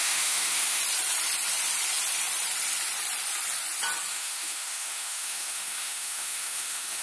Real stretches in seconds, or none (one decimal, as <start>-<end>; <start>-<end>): 0.8-4.1